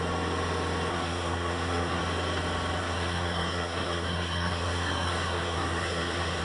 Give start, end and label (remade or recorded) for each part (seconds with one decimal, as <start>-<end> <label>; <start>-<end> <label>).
0.0-0.9 recorded; 0.9-2.0 remade; 2.0-2.8 recorded; 2.8-6.4 remade